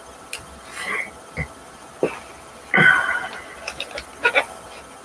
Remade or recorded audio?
recorded